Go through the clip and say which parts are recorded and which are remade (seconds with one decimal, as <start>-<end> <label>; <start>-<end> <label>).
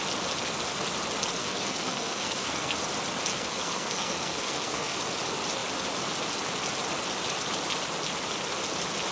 0.0-1.4 recorded; 1.4-2.8 remade; 2.8-3.3 recorded; 3.3-5.0 remade; 5.0-9.1 recorded